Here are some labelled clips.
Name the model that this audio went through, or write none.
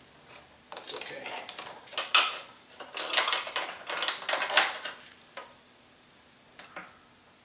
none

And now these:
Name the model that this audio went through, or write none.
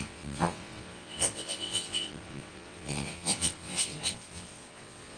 vocoder, WaveNeXt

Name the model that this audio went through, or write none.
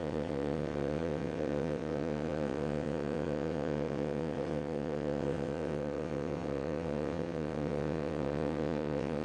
vocoder, WaveNeXt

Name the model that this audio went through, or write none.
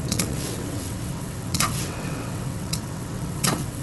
vocoder, WaveNeXt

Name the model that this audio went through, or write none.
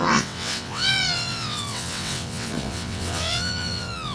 vocoder, WaveNeXt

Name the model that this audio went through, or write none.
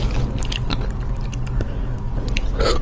none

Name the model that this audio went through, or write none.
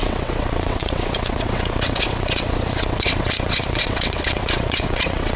vocoder, WaveNeXt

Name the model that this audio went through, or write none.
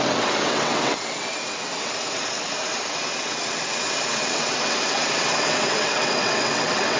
vocoder, WaveNeXt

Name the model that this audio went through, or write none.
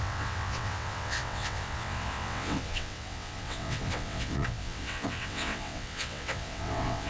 vocoder, WaveNeXt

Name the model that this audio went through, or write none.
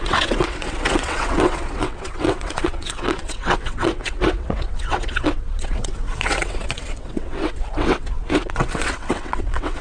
vocoder, WaveNeXt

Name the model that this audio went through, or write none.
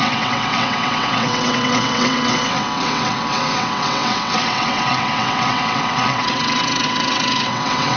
vocoder, WaveNeXt